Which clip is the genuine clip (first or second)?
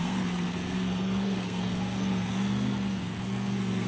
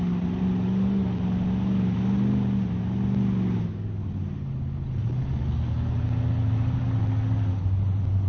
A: second